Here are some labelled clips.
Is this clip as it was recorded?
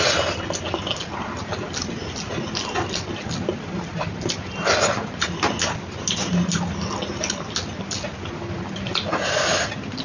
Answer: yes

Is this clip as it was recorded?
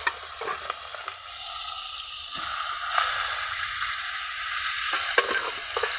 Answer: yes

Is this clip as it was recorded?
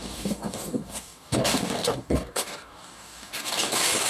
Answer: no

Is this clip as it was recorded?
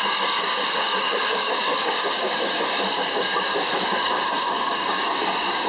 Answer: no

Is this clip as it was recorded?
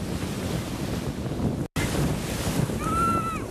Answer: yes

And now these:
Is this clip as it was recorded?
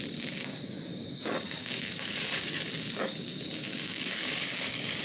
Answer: no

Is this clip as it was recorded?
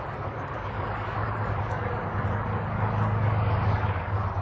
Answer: no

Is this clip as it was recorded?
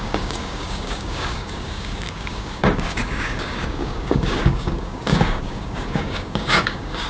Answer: no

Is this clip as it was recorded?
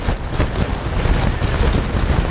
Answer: yes